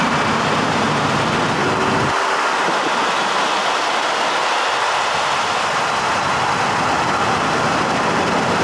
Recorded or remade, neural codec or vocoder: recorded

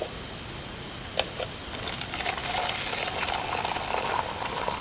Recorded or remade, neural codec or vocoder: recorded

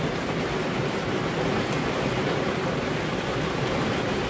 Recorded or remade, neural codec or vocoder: recorded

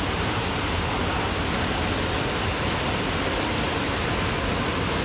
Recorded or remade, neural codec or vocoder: recorded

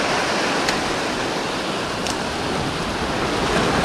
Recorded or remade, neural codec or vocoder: recorded